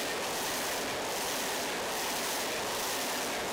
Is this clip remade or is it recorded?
recorded